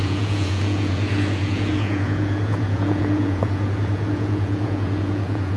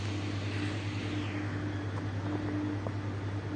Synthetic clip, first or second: first